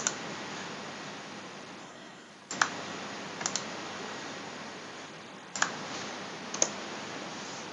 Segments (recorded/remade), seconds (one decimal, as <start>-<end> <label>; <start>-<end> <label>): 0.0-1.8 recorded; 1.8-2.3 remade; 2.3-7.7 recorded